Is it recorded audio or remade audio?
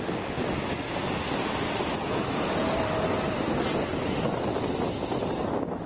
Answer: recorded